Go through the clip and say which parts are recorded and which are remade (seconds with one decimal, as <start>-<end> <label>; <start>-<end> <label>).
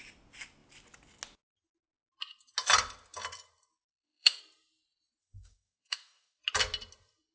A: 0.0-3.9 recorded; 3.9-4.4 remade; 4.4-5.2 recorded; 5.2-6.4 remade; 6.4-7.3 recorded